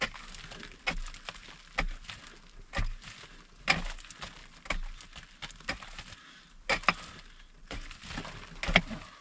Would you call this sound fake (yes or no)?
no